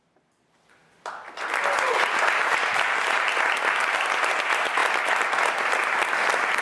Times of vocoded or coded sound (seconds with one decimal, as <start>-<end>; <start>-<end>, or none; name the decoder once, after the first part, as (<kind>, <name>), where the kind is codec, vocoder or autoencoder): none